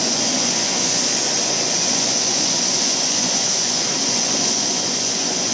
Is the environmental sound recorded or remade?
remade